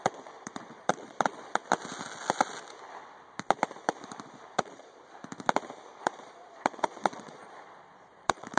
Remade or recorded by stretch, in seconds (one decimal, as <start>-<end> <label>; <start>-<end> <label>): 0.0-1.6 remade; 1.6-4.5 recorded; 4.5-5.0 remade; 5.0-6.0 recorded; 6.0-8.6 remade